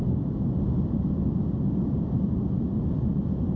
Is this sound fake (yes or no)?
no